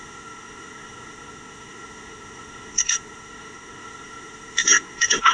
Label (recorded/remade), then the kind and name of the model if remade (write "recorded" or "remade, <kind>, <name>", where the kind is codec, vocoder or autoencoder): remade, codec, SNAC